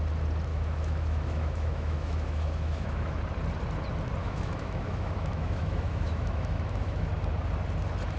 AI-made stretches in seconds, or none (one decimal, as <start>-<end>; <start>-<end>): 0.5-3.2; 4.2-7.1